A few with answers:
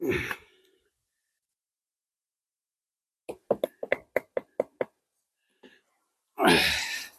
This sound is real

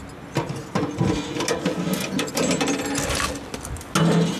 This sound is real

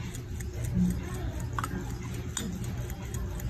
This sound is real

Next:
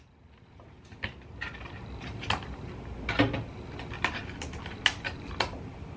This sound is real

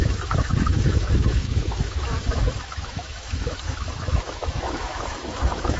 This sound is fake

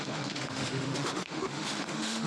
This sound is fake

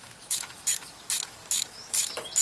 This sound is fake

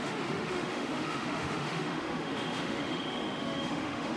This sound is fake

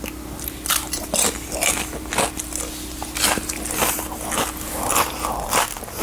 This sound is real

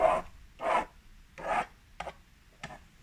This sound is real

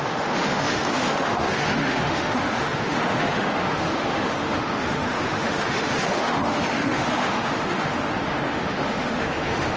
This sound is fake